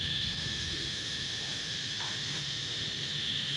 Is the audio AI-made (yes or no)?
yes